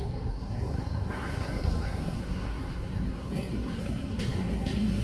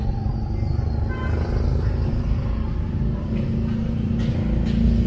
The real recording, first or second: second